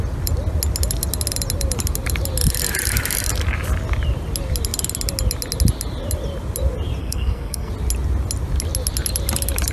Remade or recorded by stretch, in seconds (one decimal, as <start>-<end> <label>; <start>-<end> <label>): 0.0-7.0 recorded; 7.0-7.7 remade; 7.7-9.7 recorded